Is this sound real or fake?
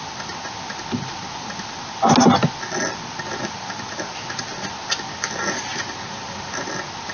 real